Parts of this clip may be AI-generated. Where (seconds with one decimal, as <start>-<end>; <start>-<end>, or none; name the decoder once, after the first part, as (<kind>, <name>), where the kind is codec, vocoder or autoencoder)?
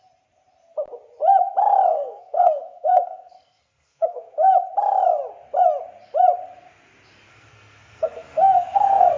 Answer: 1.9-4.5 (codec, SNAC); 7.3-9.2